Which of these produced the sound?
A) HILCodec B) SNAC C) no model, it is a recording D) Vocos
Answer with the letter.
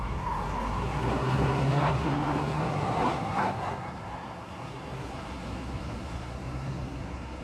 B